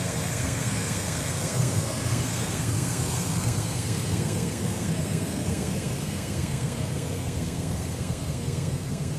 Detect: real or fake fake